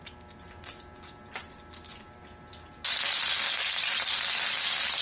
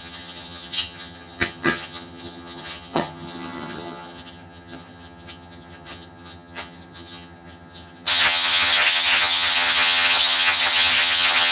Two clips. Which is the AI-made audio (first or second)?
second